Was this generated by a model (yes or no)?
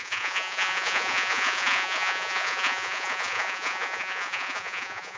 yes